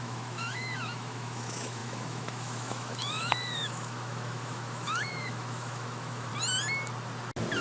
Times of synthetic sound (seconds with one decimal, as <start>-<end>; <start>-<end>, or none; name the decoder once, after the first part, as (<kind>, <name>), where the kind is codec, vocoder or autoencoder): 0.0-6.3 (autoencoder, DAC-VAE)